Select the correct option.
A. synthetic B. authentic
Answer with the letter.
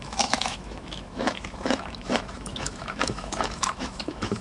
A